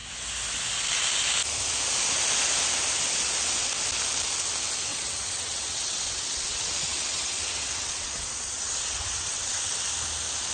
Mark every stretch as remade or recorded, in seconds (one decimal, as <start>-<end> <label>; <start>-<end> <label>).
0.0-4.9 recorded; 4.9-9.9 remade; 9.9-10.5 recorded